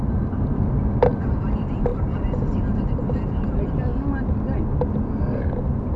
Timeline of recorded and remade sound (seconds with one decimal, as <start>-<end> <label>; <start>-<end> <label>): 0.0-3.9 remade; 3.9-6.0 recorded